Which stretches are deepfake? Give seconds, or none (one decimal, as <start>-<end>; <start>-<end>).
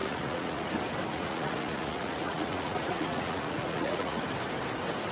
0.0-0.7; 1.1-4.2